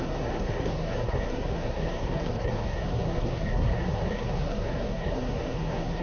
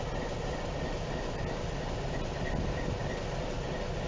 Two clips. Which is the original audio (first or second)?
second